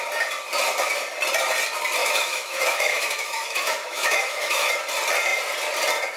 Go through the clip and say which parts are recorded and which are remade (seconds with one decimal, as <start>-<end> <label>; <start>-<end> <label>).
0.0-2.0 recorded; 2.0-4.7 remade; 4.7-6.2 recorded